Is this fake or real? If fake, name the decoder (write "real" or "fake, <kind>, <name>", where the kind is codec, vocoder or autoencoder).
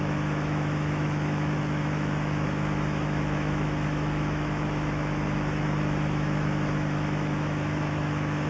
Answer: fake, autoencoder, DAC-VAE